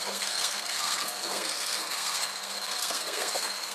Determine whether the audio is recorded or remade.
remade